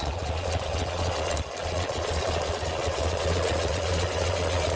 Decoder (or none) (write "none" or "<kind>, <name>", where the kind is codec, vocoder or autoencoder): vocoder, Vocos